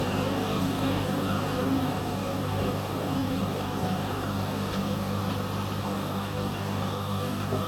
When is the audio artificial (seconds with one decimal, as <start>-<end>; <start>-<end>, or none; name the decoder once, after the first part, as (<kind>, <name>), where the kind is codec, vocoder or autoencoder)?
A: 0.0-5.2 (codec, DAC); 5.8-7.7